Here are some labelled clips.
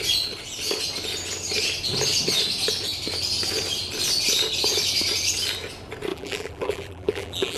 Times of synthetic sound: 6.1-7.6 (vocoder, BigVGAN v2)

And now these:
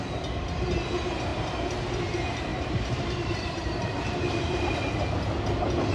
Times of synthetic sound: 2.5-4.6 (vocoder, BigVGAN v2)

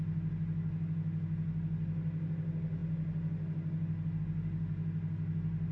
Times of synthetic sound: none

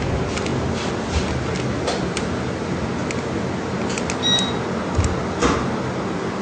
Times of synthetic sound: none

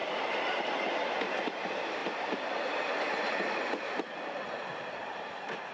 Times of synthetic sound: 2.0-3.5 (vocoder, BigVGAN v2); 4.7-5.7

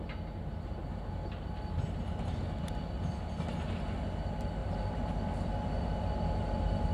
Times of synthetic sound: 4.6-6.9 (vocoder, BigVGAN v2)

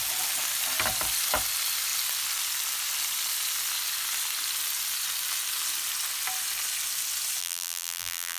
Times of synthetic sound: 7.4-8.4 (vocoder, BigVGAN v2)